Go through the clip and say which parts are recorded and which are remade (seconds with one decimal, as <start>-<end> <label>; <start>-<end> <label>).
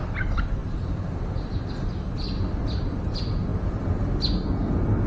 0.0-0.6 recorded; 0.6-1.5 remade; 1.5-3.5 recorded; 3.5-4.1 remade; 4.1-5.1 recorded